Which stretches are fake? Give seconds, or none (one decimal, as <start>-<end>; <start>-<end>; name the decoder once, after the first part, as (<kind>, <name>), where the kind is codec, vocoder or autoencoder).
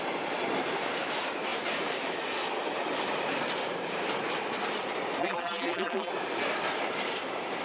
5.2-6.1 (vocoder, BigVGAN v2)